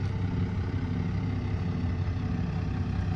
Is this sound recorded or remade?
recorded